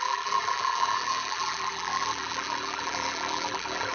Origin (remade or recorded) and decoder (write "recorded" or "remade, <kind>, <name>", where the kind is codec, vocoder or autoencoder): remade, vocoder, BigVGAN v2